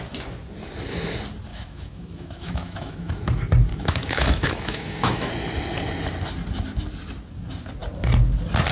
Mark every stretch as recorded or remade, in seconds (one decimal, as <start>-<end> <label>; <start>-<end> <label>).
0.0-1.5 recorded; 1.5-3.2 remade; 3.2-3.7 recorded; 3.7-5.3 remade; 5.3-8.7 recorded